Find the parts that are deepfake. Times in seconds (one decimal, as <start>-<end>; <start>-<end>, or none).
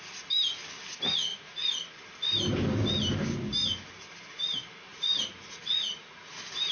1.3-2.0; 4.9-6.3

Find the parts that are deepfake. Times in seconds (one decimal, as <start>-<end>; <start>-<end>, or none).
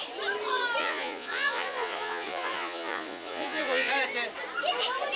0.8-3.9